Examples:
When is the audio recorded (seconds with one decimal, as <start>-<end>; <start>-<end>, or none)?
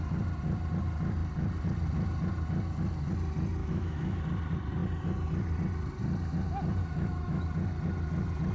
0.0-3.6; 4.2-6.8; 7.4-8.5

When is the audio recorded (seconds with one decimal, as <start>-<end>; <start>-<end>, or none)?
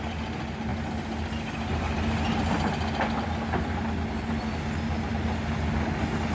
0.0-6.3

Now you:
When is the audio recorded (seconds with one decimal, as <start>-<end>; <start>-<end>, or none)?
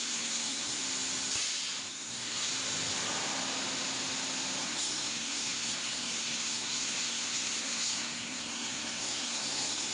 0.8-1.9; 2.5-4.6